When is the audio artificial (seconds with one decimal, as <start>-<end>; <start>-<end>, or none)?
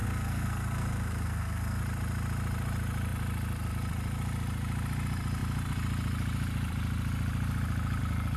0.0-1.8